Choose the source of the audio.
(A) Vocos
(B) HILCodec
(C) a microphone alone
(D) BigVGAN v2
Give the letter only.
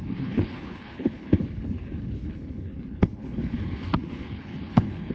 B